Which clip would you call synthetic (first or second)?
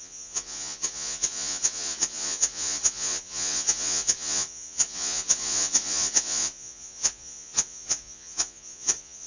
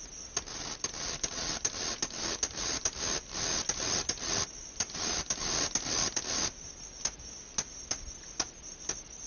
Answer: first